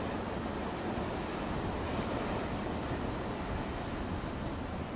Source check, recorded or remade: recorded